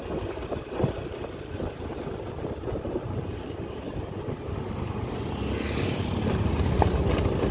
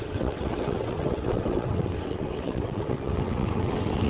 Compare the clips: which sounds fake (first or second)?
second